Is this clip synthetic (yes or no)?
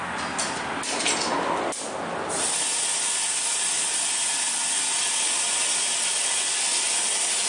no